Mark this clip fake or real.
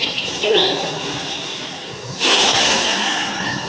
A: fake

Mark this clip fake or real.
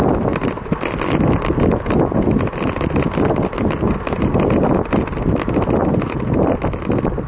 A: real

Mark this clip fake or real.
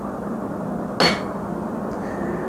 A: real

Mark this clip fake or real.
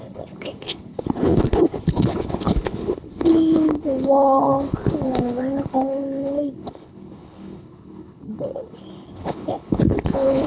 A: fake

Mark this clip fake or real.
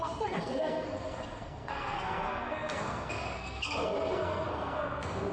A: fake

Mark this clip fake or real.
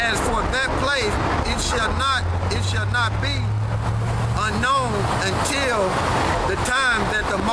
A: real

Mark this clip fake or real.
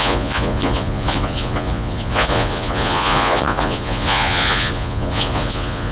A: fake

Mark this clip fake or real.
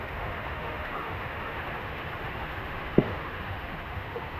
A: fake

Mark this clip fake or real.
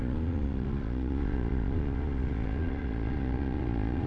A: fake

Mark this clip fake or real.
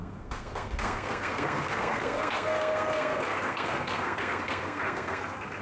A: fake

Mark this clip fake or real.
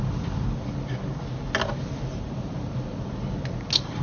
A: real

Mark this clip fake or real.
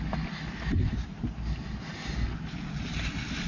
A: real